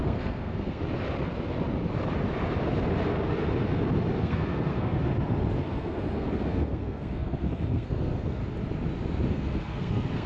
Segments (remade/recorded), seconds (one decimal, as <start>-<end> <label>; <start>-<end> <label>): 0.0-0.8 remade; 0.8-4.2 recorded; 4.2-5.0 remade; 5.0-5.6 recorded; 5.6-8.4 remade; 8.4-9.3 recorded; 9.3-10.3 remade